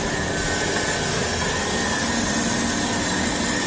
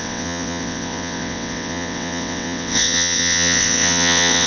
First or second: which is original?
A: first